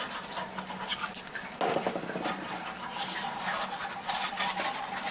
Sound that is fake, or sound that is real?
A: real